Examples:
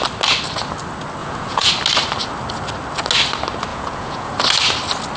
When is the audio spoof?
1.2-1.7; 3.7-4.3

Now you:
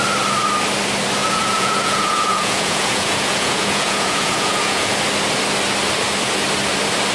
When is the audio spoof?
1.2-4.9

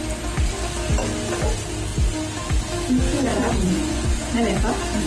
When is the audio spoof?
3.3-4.6

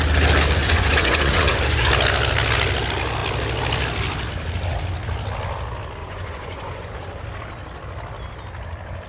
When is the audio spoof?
0.6-1.9; 6.0-6.9